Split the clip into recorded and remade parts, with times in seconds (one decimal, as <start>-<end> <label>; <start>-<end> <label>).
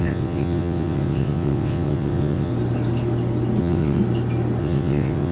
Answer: 0.0-2.5 remade; 2.5-3.6 recorded; 3.6-4.0 remade; 4.0-4.6 recorded; 4.6-5.3 remade